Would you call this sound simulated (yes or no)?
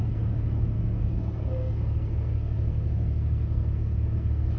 yes